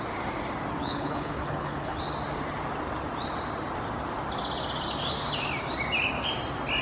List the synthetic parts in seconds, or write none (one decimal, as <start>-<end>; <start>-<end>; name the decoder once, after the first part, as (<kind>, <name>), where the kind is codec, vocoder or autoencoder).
0.8-2.0 (codec, HILCodec)